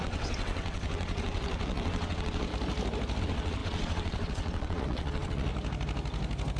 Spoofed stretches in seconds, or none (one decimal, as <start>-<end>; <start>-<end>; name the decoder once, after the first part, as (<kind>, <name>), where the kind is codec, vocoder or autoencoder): 0.0-2.5 (vocoder, WaveNeXt); 3.2-5.5